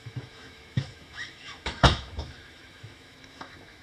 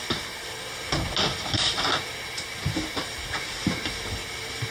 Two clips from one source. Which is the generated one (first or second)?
first